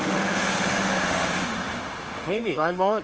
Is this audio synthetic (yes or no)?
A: yes